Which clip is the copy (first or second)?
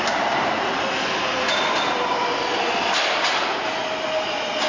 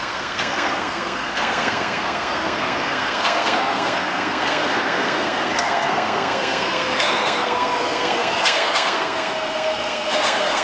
second